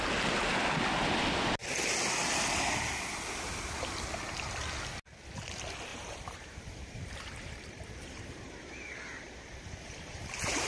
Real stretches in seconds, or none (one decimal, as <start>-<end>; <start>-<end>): 0.0-5.9